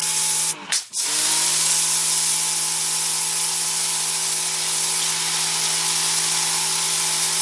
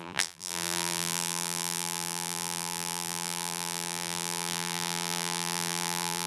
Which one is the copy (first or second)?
second